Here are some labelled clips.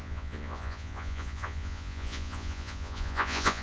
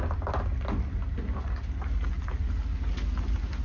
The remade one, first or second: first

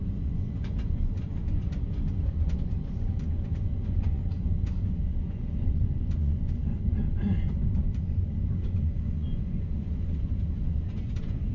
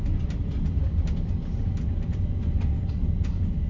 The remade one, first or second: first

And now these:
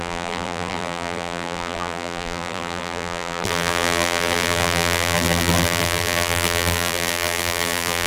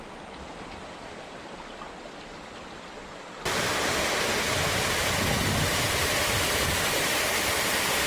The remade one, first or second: first